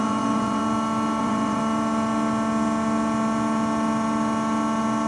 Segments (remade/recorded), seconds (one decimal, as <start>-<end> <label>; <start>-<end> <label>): 0.0-0.6 remade; 0.6-1.2 recorded; 1.2-1.6 remade; 1.6-5.1 recorded